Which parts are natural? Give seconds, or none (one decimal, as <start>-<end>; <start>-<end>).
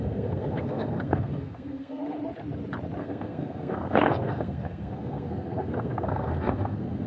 2.0-3.0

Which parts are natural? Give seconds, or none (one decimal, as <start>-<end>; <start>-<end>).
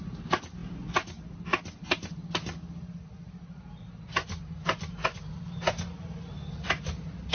0.0-7.3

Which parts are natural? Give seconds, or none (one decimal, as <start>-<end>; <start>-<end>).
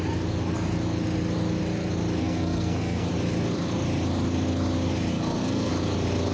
0.0-2.2; 3.1-5.1; 5.7-6.3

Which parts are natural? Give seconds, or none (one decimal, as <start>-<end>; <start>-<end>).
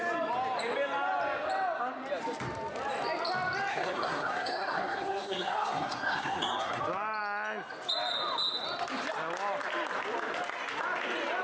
0.0-3.7; 6.8-11.4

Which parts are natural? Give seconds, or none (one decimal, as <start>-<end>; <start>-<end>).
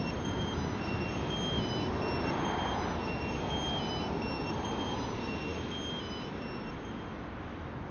0.0-7.9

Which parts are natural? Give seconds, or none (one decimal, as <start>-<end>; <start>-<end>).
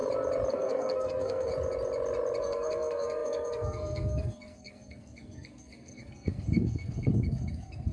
0.0-0.5; 1.5-2.4